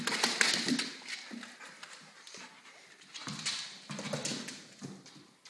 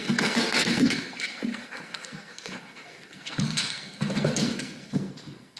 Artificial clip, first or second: second